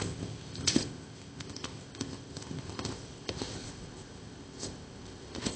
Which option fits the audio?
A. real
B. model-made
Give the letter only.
B